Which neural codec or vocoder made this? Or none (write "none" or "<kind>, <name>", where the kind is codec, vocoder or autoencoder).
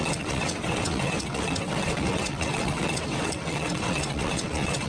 vocoder, WaveNeXt